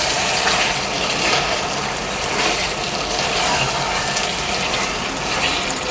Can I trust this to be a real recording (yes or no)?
yes